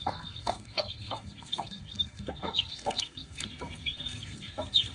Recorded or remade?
remade